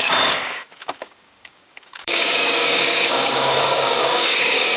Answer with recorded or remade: remade